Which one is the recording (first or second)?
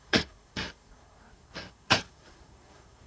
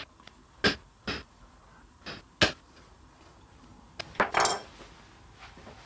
second